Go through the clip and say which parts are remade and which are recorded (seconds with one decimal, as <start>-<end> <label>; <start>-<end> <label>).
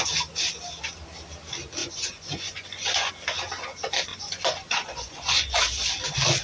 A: 0.0-1.8 recorded; 1.8-3.1 remade; 3.1-4.1 recorded; 4.1-5.6 remade; 5.6-6.4 recorded